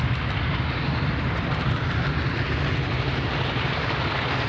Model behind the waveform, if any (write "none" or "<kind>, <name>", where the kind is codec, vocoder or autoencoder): none